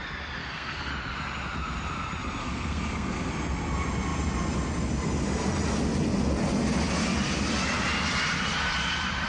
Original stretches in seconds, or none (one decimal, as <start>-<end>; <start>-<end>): 0.0-0.4; 0.9-2.4; 3.3-9.3